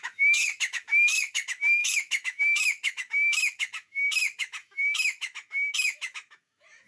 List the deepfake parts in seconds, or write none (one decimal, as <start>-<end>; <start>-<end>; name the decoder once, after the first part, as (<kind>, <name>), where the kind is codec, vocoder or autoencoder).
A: 0.0-6.9 (autoencoder, DAC-VAE)